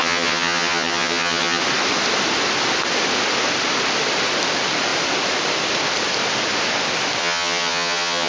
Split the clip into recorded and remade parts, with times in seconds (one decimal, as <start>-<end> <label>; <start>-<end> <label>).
0.0-1.6 remade; 1.6-7.2 recorded; 7.2-8.3 remade